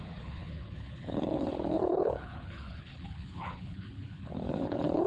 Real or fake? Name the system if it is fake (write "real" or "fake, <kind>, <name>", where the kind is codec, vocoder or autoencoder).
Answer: fake, codec, HILCodec